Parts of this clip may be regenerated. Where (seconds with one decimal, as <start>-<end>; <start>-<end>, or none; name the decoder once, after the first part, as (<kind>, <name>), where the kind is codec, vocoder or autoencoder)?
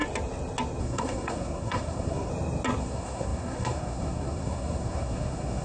0.8-2.3 (codec, SNAC); 2.8-5.6